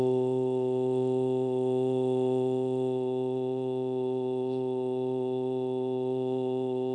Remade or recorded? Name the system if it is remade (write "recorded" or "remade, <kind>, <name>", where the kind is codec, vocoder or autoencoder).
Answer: remade, autoencoder, DAC-VAE